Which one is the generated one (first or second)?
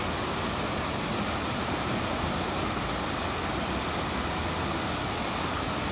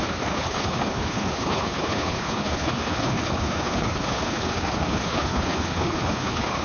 second